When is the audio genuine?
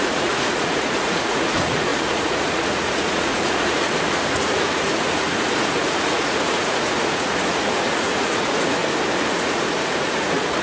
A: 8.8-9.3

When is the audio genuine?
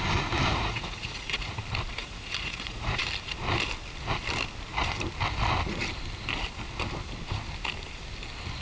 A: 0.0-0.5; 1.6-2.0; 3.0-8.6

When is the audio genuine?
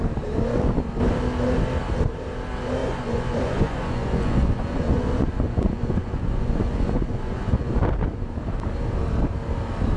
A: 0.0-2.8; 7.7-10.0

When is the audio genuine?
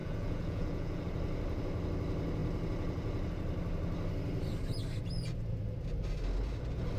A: 1.0-7.0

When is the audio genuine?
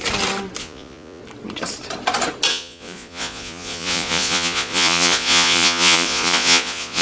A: 0.0-0.6; 1.2-2.5